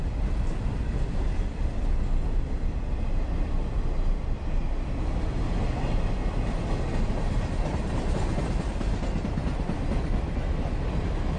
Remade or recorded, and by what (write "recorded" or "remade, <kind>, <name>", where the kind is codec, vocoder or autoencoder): recorded